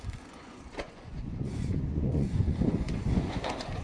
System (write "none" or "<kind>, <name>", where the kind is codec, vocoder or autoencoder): vocoder, Vocos